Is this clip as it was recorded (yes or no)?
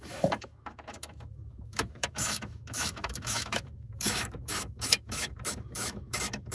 no